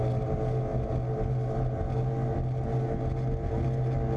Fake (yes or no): no